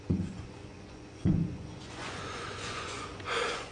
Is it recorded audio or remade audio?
remade